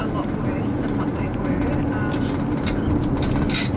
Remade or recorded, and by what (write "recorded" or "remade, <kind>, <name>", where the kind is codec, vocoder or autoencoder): recorded